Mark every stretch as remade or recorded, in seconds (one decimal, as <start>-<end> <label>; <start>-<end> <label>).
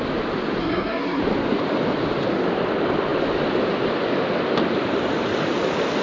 0.0-0.6 recorded; 0.6-1.2 remade; 1.2-6.0 recorded